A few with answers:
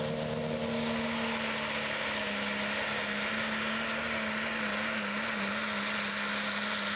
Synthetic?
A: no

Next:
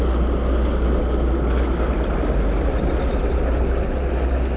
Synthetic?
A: no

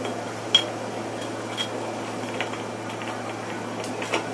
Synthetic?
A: no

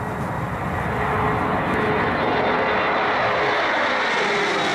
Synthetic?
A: no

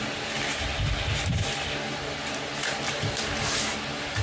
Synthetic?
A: no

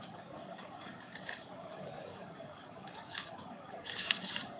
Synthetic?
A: yes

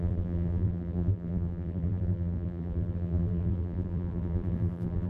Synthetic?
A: yes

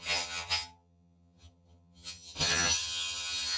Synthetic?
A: yes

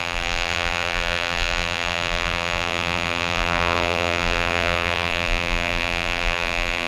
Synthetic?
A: yes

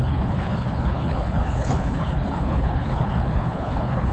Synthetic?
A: yes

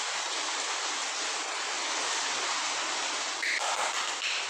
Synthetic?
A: no